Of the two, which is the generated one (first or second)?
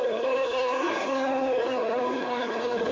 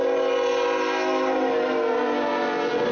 first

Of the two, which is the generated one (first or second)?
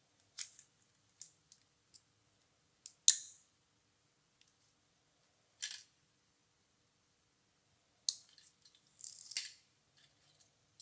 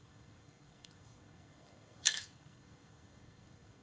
second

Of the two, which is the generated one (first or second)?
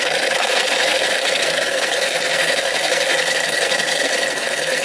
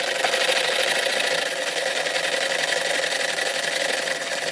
first